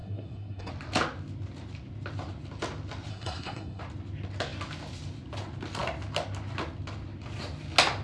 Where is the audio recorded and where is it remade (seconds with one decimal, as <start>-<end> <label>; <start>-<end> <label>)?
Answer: 0.0-0.7 remade; 0.7-3.1 recorded; 3.1-3.8 remade; 3.8-8.0 recorded